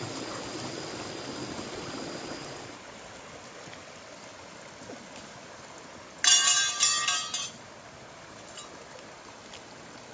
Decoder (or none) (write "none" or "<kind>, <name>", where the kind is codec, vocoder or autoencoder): none